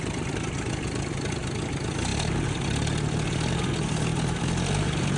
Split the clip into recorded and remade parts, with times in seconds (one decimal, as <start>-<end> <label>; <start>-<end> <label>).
0.0-5.2 recorded